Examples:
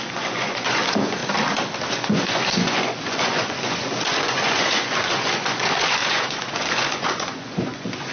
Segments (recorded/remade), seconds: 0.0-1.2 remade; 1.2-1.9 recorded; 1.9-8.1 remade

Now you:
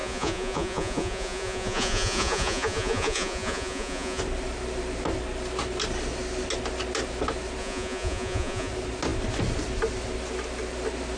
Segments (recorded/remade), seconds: 0.0-4.2 remade; 4.2-7.6 recorded; 7.6-8.7 remade; 8.7-11.2 recorded